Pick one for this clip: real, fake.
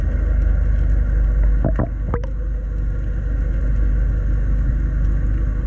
real